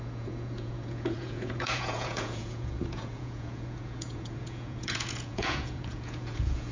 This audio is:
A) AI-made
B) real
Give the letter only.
A